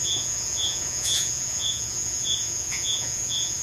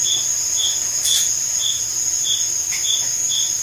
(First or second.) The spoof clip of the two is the first